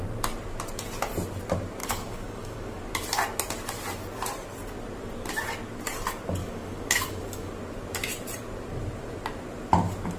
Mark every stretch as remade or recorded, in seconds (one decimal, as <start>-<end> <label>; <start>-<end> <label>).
0.0-1.8 recorded; 1.8-2.8 remade; 2.8-6.4 recorded; 6.4-7.5 remade; 7.5-10.2 recorded